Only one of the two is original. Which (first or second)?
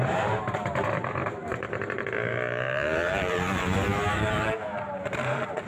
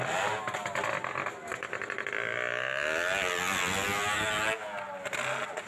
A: second